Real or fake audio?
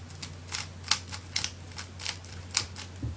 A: real